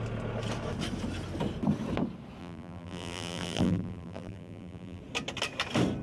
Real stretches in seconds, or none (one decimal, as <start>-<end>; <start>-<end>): 0.0-2.4; 5.0-6.0